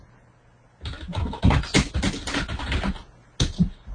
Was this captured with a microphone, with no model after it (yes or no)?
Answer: yes